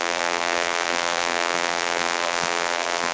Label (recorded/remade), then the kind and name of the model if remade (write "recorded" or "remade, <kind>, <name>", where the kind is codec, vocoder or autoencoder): remade, vocoder, BigVGAN v2